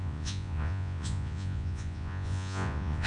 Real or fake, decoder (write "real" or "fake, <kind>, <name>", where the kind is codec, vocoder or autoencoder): fake, vocoder, Vocos